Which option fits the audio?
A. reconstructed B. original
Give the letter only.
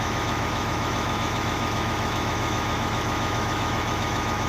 A